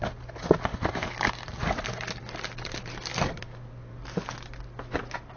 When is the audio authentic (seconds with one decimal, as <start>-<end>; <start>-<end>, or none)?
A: 0.0-5.4